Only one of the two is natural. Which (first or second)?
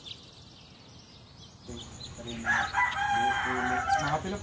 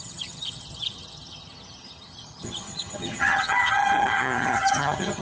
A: first